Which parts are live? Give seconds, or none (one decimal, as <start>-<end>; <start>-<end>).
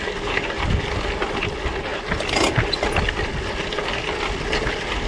0.0-5.1